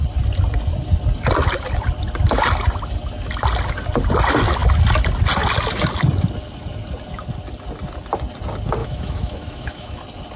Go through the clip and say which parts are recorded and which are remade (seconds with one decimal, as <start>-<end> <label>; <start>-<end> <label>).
0.0-8.8 recorded; 8.8-10.0 remade; 10.0-10.4 recorded